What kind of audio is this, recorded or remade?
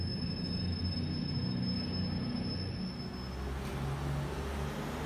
recorded